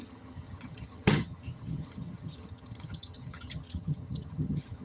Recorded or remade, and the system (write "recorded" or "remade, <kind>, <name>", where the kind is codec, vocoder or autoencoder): remade, vocoder, HiFi-GAN